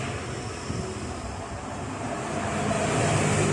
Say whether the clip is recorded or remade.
recorded